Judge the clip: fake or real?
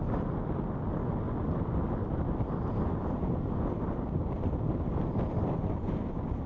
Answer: real